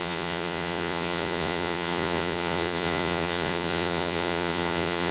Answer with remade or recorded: remade